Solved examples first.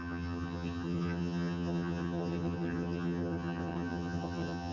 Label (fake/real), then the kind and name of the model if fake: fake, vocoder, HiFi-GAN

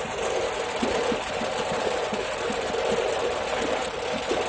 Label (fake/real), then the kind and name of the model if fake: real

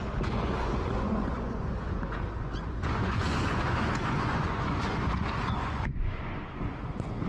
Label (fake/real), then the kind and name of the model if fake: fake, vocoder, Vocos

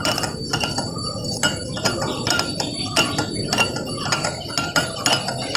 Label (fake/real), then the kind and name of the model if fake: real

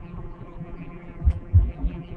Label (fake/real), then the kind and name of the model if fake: fake, vocoder, BigVGAN v2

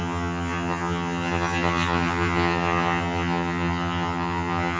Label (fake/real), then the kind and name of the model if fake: fake, vocoder, HiFi-GAN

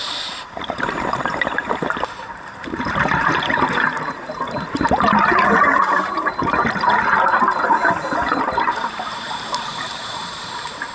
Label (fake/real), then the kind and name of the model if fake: fake, vocoder, BigVGAN v2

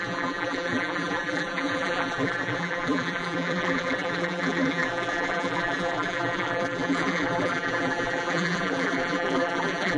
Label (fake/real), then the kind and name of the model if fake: fake, vocoder, BigVGAN v2